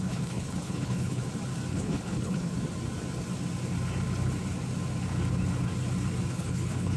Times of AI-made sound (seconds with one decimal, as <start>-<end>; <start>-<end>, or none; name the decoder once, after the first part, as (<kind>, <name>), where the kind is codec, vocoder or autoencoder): 0.0-1.2 (codec, HILCodec); 1.7-2.5; 6.3-7.0